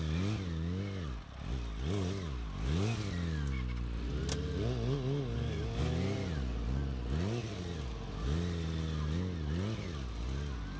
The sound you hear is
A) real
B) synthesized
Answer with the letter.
A